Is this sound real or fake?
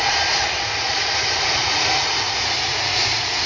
fake